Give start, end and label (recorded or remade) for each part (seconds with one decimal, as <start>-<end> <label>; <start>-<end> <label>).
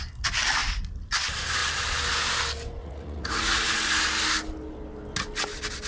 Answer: 0.0-2.8 recorded; 2.8-3.7 remade; 3.7-5.9 recorded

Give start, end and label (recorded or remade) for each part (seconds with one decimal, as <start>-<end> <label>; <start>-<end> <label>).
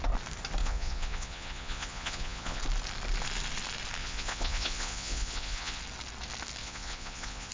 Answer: 0.0-0.6 recorded; 0.6-2.6 remade; 2.6-4.0 recorded; 4.0-5.8 remade; 5.8-6.6 recorded; 6.6-7.5 remade